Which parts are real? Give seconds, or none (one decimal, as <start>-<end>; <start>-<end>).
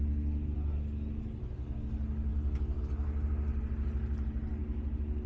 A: 0.0-5.3